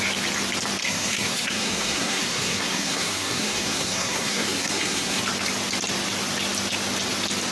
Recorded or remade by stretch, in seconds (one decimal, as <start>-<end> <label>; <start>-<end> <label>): 0.0-0.8 recorded; 0.8-5.2 remade; 5.2-7.5 recorded